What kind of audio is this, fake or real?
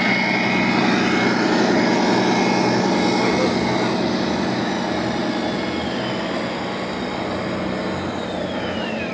real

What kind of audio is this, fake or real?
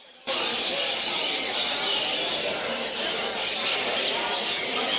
real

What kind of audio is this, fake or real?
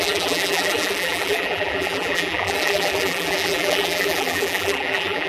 fake